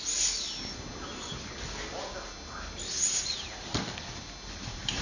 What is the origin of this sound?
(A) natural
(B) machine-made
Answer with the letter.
A